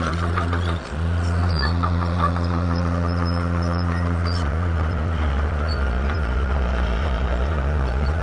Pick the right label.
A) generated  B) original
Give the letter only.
A